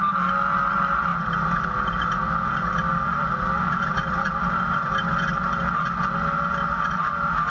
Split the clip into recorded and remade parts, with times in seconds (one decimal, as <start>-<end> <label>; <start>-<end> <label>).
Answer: 0.0-7.5 recorded